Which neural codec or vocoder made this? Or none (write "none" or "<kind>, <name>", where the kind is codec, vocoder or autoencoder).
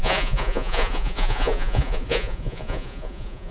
vocoder, Vocos